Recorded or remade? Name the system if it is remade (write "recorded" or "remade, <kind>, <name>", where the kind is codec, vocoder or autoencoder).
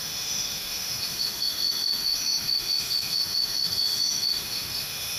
remade, autoencoder, DAC-VAE